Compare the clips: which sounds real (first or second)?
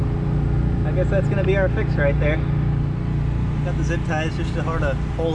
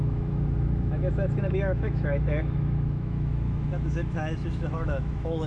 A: first